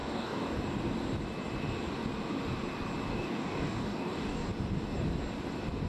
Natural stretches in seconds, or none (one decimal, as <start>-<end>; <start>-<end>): 0.6-3.1; 4.5-5.9